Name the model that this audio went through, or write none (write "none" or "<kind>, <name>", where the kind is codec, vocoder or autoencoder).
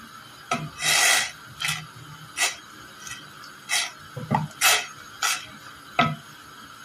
none